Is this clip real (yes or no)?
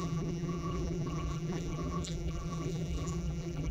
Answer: no